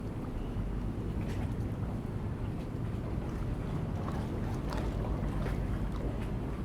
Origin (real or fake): real